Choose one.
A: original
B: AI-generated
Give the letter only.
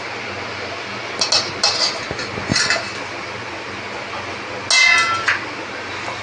A